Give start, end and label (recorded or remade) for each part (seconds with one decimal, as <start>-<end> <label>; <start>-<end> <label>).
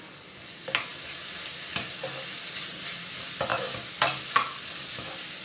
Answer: 0.0-5.4 recorded